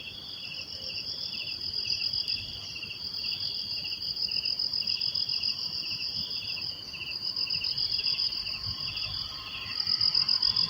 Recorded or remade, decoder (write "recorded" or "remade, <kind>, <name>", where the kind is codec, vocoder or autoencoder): recorded